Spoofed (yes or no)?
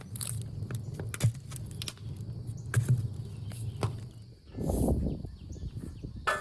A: no